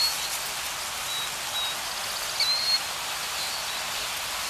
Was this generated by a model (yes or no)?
no